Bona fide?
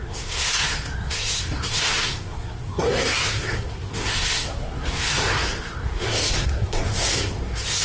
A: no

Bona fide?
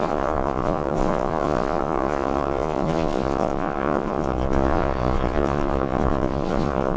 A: no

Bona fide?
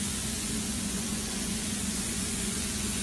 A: no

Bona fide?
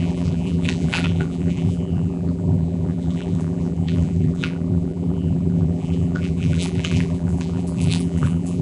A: no